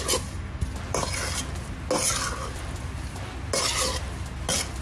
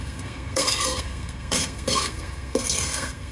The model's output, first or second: second